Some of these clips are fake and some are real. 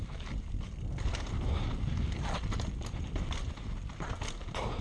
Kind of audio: real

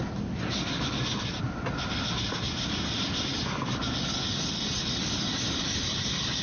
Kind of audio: real